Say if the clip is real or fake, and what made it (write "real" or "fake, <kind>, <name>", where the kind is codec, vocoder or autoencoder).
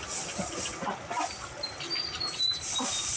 real